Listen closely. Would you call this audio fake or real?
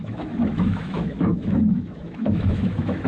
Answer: fake